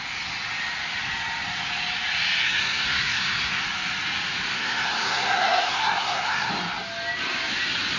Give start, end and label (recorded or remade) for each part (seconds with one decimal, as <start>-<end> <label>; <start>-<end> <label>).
0.0-2.4 recorded; 2.4-3.6 remade; 3.6-4.5 recorded; 4.5-6.5 remade; 6.5-8.0 recorded